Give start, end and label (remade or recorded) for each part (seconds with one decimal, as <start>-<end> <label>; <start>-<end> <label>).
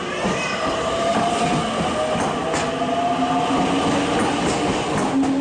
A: 0.0-5.4 recorded